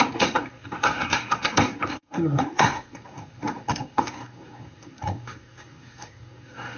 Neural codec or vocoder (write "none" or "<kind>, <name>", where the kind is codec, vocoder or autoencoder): codec, SNAC